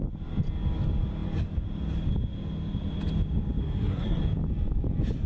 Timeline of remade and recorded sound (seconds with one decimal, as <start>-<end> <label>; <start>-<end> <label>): 0.0-3.6 recorded; 3.6-4.2 remade; 4.2-5.3 recorded